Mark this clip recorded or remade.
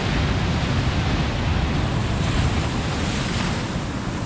recorded